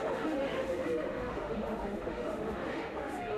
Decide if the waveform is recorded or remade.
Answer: remade